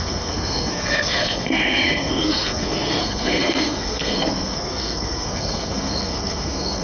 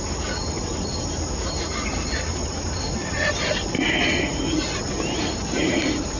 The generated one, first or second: first